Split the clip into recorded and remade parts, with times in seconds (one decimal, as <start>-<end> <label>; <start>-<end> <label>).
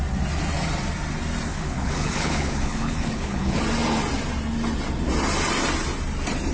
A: 0.0-1.5 recorded; 1.5-3.6 remade; 3.6-6.5 recorded